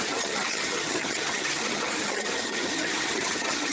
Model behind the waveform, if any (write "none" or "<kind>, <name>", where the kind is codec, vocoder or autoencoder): vocoder, HiFi-GAN